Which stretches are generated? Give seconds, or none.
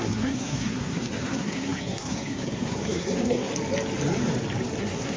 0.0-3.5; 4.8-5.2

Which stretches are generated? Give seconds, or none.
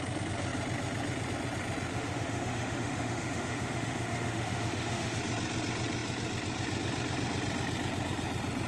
1.9-5.2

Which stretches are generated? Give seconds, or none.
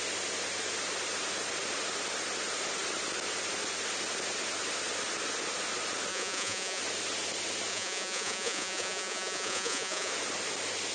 6.1-6.8; 7.7-10.1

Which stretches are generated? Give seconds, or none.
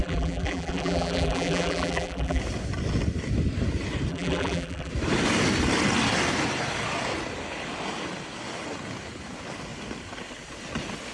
0.0-2.4; 4.1-4.9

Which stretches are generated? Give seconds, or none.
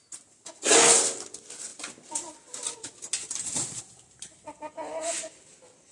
none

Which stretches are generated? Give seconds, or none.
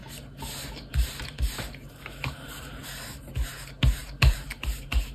0.9-2.8; 4.0-5.1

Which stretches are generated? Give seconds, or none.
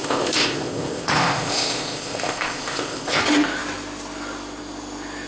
0.0-3.2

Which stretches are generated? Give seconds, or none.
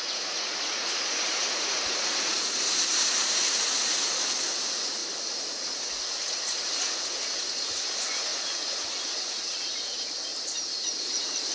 0.0-5.0; 5.5-10.3; 10.8-11.5